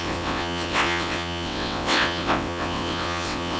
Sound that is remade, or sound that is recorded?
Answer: remade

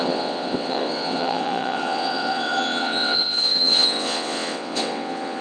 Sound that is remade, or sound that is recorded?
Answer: remade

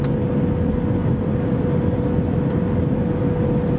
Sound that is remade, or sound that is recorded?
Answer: recorded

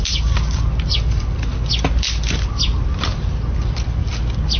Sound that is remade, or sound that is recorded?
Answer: recorded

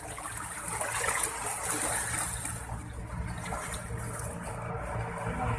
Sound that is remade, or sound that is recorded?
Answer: recorded